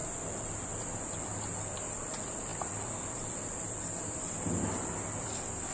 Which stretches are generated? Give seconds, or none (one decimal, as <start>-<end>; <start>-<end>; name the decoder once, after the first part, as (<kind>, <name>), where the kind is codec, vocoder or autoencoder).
2.5-4.2 (vocoder, BigVGAN v2)